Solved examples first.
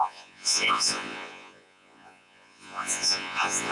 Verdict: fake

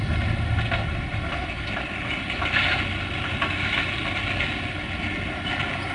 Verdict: real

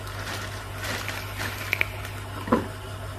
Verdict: real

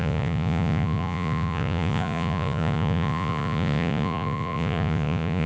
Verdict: fake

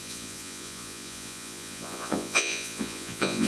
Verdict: fake